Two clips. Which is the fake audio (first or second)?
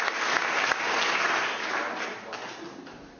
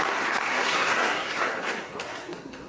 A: second